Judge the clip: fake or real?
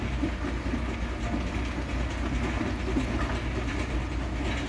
real